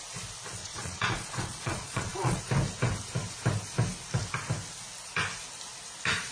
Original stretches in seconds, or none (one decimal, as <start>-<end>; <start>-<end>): 0.0-0.6; 2.4-6.3